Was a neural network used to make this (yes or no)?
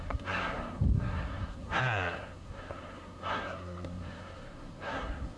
yes